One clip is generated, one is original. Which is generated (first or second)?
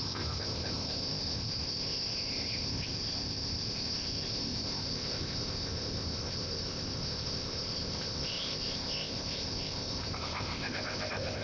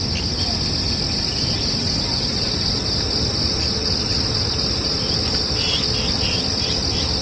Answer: first